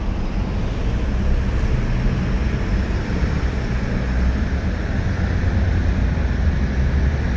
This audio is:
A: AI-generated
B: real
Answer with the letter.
B